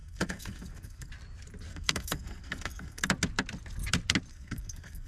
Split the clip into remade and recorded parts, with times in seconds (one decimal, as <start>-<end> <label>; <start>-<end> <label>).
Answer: 0.0-1.1 remade; 1.1-1.7 recorded; 1.7-3.1 remade; 3.1-4.3 recorded; 4.3-5.1 remade